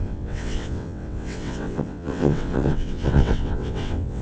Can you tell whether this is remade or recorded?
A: remade